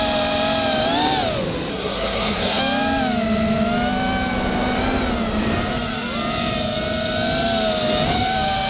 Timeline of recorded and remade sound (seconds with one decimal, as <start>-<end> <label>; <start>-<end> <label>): 0.0-1.7 recorded; 1.7-2.6 remade; 2.6-8.7 recorded